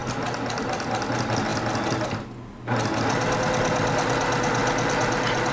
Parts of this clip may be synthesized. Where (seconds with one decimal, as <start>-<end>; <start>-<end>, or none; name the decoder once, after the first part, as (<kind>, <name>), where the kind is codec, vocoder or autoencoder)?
none